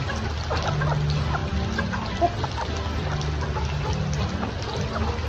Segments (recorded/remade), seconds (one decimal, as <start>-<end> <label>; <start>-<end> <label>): 0.0-5.3 recorded